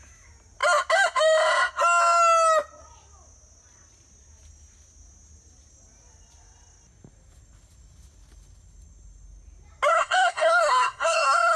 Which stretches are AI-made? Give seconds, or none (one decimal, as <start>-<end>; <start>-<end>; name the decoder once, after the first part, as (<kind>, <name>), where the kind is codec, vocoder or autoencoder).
9.9-11.6 (codec, SNAC)